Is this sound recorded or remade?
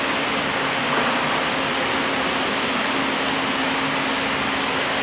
recorded